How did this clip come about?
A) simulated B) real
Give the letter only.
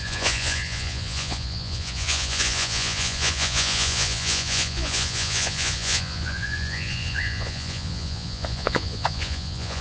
A